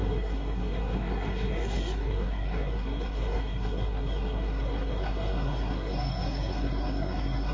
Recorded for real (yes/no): no